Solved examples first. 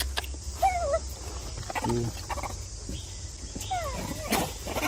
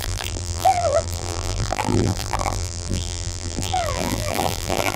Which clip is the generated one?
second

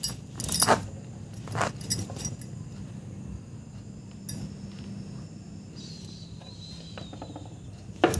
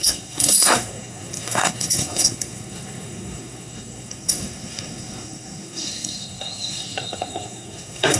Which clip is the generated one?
second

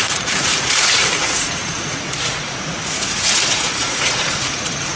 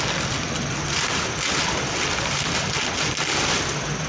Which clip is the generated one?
first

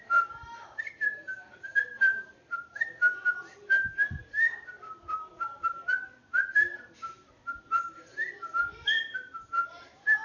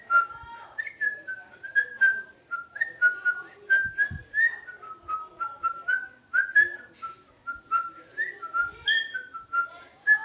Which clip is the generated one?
first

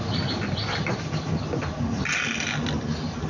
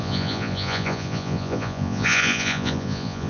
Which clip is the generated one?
second